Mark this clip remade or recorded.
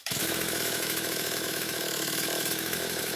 remade